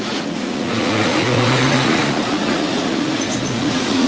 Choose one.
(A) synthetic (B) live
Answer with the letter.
A